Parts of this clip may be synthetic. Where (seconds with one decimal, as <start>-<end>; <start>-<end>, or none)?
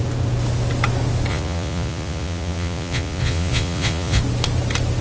1.3-4.2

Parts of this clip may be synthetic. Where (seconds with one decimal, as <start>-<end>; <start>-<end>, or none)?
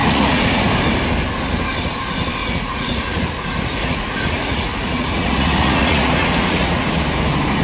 0.0-0.7; 2.4-7.0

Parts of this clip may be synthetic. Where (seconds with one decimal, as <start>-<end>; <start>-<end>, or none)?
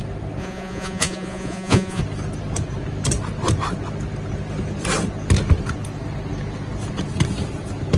0.4-2.0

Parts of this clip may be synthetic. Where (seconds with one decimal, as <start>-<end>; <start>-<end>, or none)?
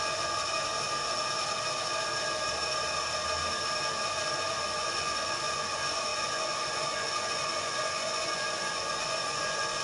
0.0-0.4; 4.6-9.8